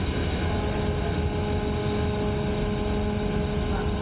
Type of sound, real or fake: real